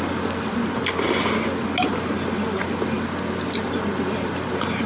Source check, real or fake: real